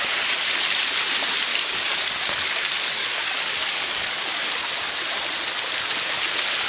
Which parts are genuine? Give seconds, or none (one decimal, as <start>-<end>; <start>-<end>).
0.0-1.5; 4.5-6.7